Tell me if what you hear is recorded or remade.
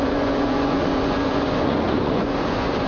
remade